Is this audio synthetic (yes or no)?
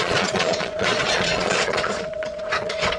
yes